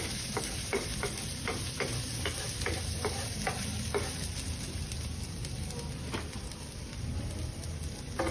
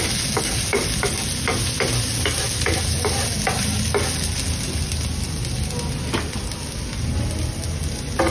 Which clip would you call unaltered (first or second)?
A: second